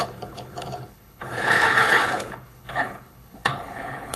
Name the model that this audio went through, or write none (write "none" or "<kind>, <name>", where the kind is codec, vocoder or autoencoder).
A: codec, HILCodec